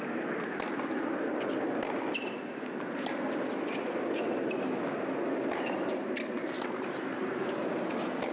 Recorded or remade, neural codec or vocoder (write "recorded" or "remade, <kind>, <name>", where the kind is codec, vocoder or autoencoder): recorded